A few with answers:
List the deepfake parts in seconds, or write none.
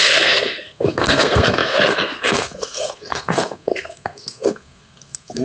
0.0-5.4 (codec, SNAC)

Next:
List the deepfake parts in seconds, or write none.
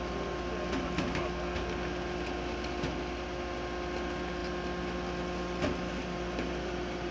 none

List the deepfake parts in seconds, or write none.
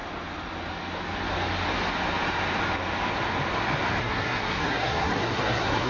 4.0-5.9 (codec, SNAC)